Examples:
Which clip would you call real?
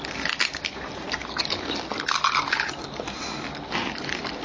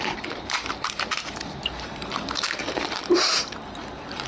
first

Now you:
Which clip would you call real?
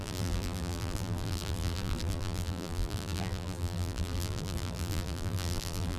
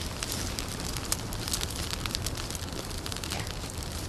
second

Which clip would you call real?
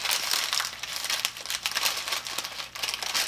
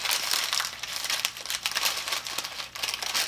first